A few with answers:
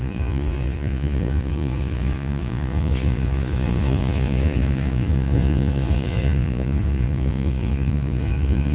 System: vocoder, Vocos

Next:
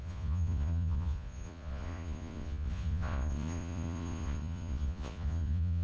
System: vocoder, Vocos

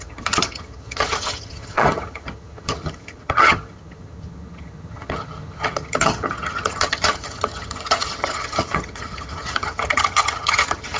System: vocoder, HiFi-GAN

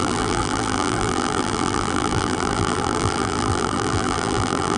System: vocoder, BigVGAN v2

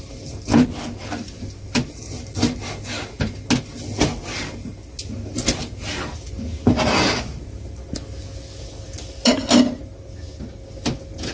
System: none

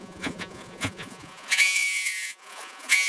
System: vocoder, Vocos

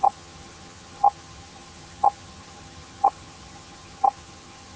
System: vocoder, HiFi-GAN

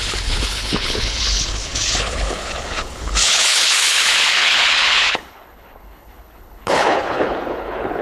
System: codec, HILCodec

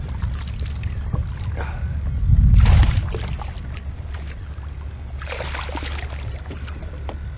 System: none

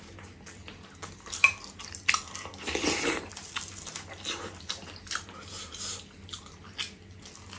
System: none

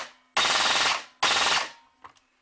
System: none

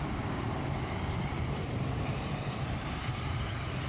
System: vocoder, BigVGAN v2